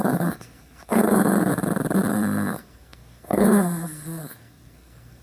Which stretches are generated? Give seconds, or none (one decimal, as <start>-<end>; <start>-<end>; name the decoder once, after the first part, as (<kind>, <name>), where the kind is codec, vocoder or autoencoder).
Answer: 0.0-1.5 (codec, SNAC); 2.1-5.2